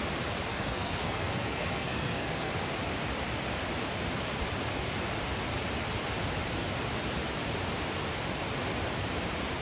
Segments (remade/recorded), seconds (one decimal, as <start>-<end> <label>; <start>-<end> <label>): 0.0-0.5 recorded; 0.5-2.5 remade; 2.5-9.6 recorded